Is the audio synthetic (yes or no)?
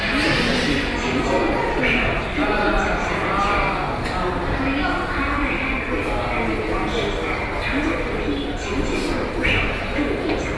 no